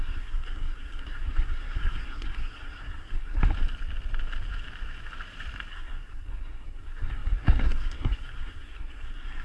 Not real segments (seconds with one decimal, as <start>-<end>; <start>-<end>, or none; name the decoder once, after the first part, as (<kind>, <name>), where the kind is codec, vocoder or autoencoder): 0.0-3.4 (codec, SNAC); 5.7-9.4